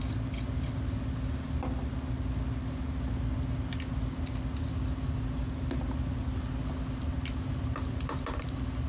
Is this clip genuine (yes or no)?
yes